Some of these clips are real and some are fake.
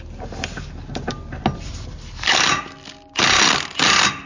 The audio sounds real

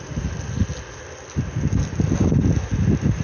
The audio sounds real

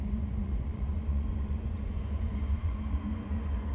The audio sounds fake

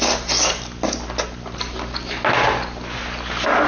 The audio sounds real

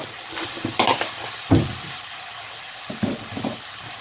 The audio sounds real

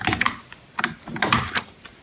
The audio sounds real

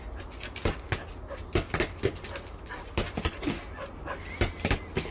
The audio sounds real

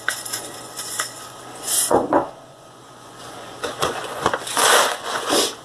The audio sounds fake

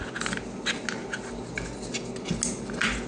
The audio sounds real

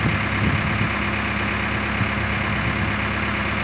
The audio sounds real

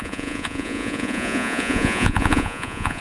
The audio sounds fake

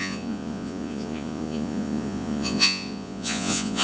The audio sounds fake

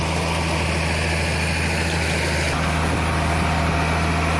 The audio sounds real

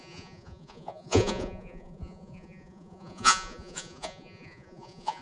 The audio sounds fake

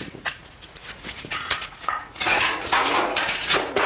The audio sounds fake